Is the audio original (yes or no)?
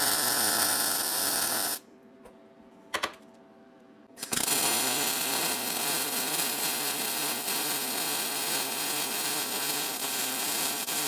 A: no